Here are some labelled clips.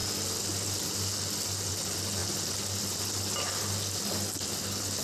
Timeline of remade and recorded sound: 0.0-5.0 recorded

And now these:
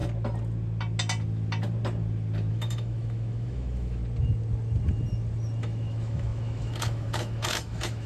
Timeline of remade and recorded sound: 0.0-2.5 recorded; 2.5-4.0 remade; 4.0-5.6 recorded; 5.6-8.1 remade

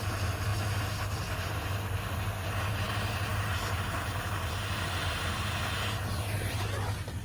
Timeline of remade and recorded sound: 0.0-7.2 recorded

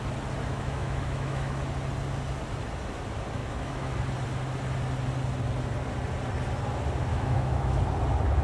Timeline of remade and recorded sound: 0.0-0.5 recorded; 0.5-1.6 remade; 1.6-3.4 recorded; 3.4-3.9 remade; 3.9-7.1 recorded; 7.1-7.8 remade; 7.8-8.4 recorded